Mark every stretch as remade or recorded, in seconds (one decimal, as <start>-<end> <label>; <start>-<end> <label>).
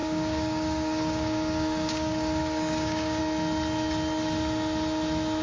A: 0.0-3.2 remade; 3.2-5.4 recorded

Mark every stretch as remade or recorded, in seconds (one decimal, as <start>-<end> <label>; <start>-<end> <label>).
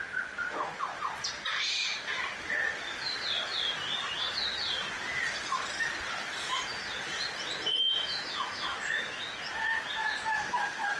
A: 0.0-8.1 recorded; 8.1-9.2 remade; 9.2-10.0 recorded; 10.0-11.0 remade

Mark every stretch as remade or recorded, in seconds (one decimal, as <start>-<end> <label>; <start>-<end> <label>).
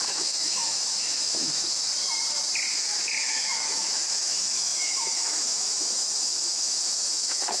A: 0.0-1.9 remade; 1.9-2.7 recorded; 2.7-7.6 remade